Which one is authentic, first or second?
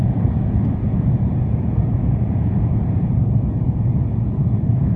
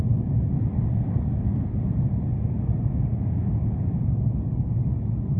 second